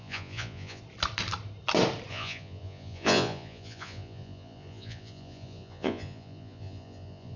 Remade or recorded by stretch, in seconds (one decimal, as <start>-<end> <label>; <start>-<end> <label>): 0.0-0.8 remade; 0.8-2.1 recorded; 2.1-7.4 remade